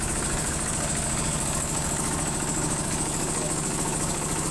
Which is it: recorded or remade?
remade